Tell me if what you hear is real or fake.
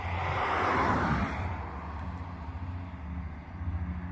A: real